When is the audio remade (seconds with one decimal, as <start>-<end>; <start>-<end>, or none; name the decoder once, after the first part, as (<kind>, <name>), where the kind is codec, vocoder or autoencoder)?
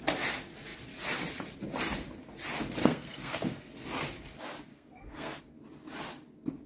2.8-3.7 (codec, SNAC); 4.7-5.4